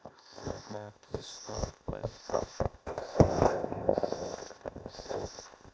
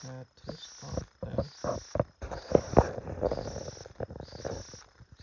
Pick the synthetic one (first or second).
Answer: first